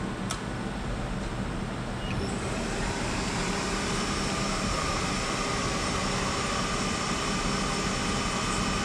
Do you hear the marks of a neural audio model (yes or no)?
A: no